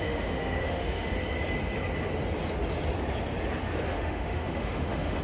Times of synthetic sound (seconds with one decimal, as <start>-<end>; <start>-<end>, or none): 0.0-1.1; 3.9-5.2